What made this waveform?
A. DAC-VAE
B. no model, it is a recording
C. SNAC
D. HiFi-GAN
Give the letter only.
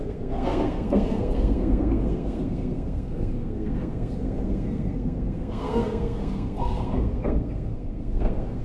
C